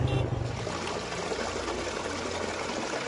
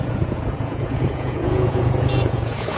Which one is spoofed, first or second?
second